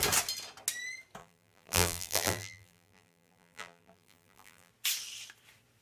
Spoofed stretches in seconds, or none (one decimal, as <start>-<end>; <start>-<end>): 1.2-4.7